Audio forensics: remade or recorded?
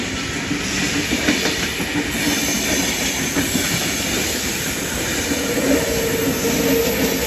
recorded